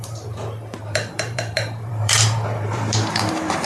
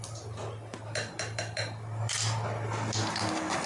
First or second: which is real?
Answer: second